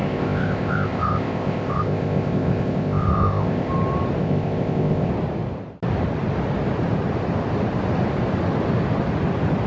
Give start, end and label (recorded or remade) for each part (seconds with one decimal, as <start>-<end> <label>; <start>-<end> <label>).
0.0-3.7 remade; 3.7-4.2 recorded; 4.2-5.1 remade; 5.1-9.7 recorded